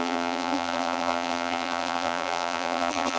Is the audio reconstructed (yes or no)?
yes